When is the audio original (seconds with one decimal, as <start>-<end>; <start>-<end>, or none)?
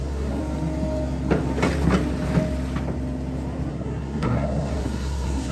0.4-3.7